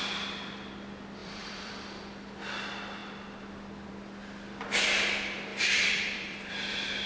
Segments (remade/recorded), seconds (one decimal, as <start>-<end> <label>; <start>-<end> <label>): 0.0-1.2 recorded; 1.2-1.7 remade; 1.7-5.5 recorded; 5.5-6.5 remade; 6.5-7.1 recorded